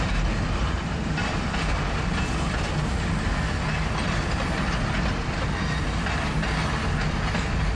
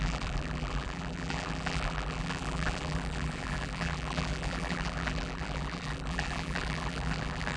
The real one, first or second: first